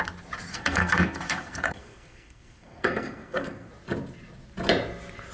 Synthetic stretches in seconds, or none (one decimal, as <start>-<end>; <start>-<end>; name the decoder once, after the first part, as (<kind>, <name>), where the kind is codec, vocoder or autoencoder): 0.5-3.7 (codec, SNAC)